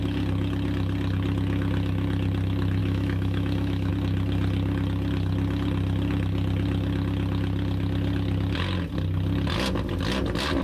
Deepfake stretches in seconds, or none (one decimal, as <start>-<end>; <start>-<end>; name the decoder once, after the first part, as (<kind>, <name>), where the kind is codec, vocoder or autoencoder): 2.8-3.9 (autoencoder, DAC-VAE)